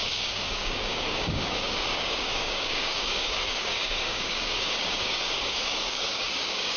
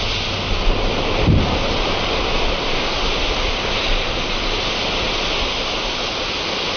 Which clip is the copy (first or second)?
first